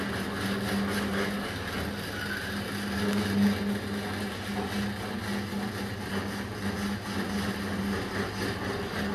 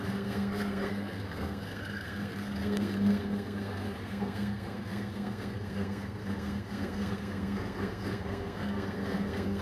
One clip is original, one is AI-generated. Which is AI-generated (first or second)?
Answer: second